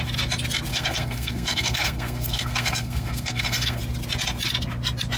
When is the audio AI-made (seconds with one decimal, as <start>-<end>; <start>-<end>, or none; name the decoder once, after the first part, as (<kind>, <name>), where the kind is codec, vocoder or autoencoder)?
0.7-3.8 (codec, SNAC)